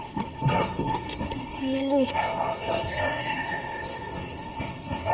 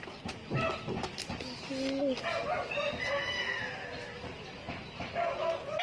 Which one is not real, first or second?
first